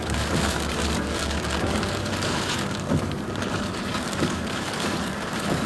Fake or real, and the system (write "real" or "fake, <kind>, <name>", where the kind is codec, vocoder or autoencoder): fake, codec, DAC